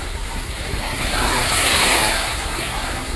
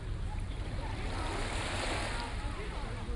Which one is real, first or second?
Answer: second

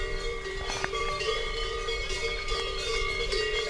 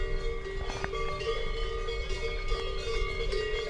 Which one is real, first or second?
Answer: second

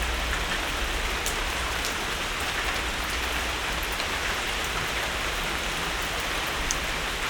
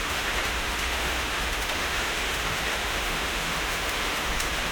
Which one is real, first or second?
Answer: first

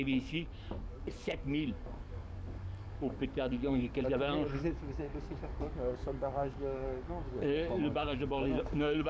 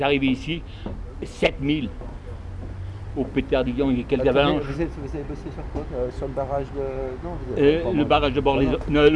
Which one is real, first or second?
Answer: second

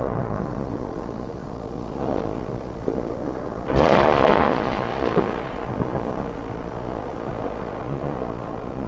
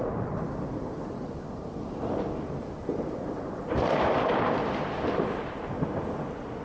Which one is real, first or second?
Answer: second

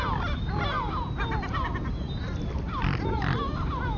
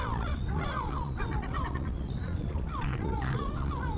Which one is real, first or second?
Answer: first